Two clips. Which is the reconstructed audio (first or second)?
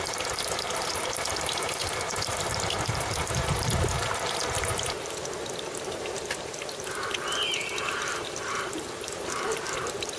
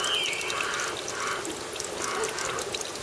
first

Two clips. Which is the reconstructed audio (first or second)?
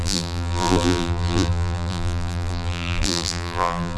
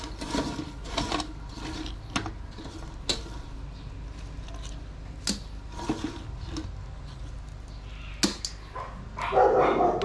first